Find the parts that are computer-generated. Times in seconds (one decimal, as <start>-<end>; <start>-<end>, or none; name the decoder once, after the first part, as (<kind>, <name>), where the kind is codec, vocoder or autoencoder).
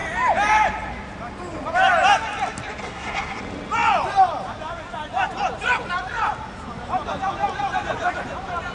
2.8-3.4 (codec, SNAC)